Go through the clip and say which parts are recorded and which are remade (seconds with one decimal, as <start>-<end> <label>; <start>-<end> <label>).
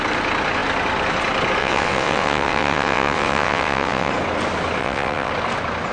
0.0-1.6 recorded; 1.6-4.1 remade; 4.1-4.8 recorded; 4.8-5.3 remade; 5.3-5.9 recorded